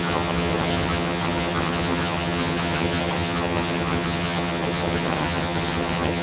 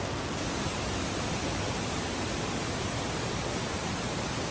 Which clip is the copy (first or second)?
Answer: first